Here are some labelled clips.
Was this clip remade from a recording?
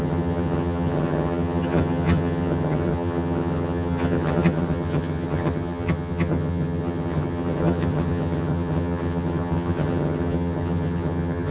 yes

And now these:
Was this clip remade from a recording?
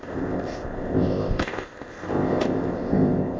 yes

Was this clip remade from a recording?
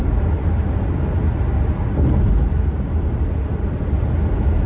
no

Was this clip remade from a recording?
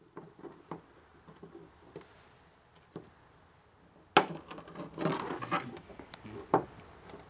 no